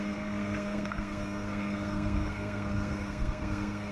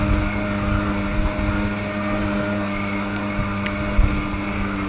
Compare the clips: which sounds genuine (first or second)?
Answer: second